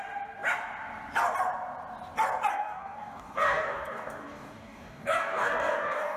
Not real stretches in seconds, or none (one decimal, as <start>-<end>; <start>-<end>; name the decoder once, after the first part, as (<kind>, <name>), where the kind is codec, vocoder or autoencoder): 2.5-6.2 (codec, DAC)